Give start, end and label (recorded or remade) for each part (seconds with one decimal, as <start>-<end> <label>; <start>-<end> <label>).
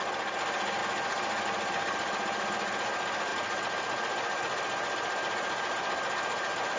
0.0-6.8 recorded